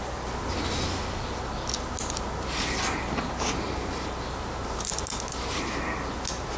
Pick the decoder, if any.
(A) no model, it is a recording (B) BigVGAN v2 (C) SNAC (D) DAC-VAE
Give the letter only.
A